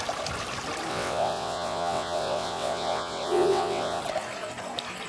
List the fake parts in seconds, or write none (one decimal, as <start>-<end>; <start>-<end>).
0.9-4.0